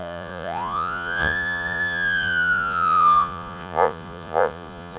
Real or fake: fake